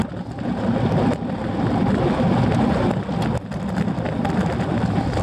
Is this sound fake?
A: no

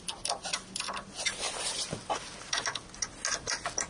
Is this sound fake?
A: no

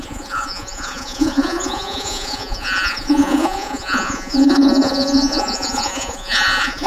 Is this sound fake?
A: yes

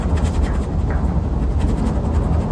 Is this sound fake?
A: no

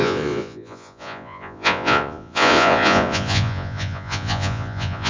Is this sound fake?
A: yes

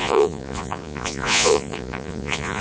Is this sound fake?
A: yes